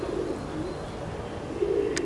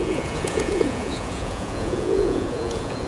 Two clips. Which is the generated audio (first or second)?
second